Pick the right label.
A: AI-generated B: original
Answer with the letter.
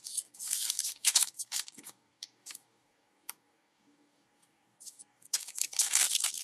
A